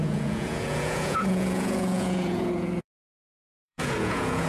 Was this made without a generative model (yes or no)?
no